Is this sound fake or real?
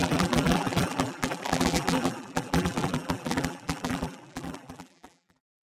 fake